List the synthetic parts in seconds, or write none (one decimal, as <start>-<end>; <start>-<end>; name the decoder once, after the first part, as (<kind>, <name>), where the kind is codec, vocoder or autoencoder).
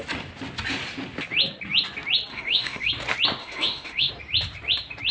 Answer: 2.3-2.9 (autoencoder, DAC-VAE); 3.4-4.1